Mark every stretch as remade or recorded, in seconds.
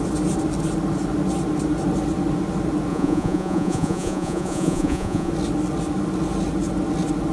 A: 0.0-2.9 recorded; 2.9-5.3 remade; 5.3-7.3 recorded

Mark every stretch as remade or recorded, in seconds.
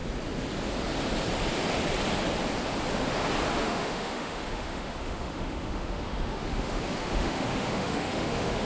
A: 0.0-3.6 recorded; 3.6-8.6 remade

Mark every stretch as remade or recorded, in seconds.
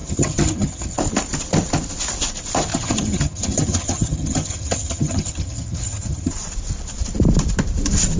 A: 0.0-1.0 remade; 1.0-2.7 recorded; 2.7-6.3 remade; 6.3-8.2 recorded